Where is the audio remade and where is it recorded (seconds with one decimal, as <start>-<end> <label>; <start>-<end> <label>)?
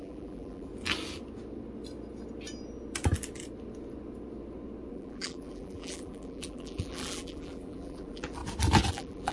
0.0-0.7 remade; 0.7-4.9 recorded; 4.9-8.4 remade; 8.4-8.9 recorded; 8.9-9.3 remade